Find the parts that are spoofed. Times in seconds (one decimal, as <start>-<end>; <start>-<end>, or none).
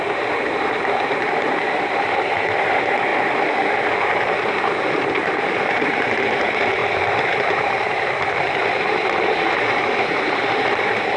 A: 0.0-3.1; 3.9-11.2